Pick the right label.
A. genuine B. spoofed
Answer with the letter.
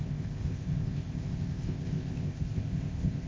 B